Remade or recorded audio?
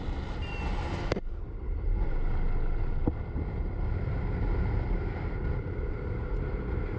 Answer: recorded